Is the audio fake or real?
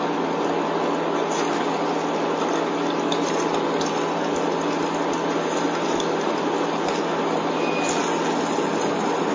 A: real